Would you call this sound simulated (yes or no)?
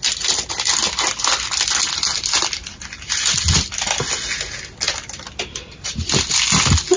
no